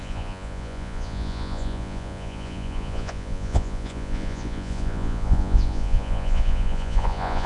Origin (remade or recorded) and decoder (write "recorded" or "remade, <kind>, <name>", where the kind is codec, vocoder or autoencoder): remade, vocoder, Vocos